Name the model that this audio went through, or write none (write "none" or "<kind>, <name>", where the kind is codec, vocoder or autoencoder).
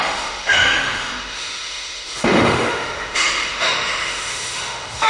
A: autoencoder, DAC-VAE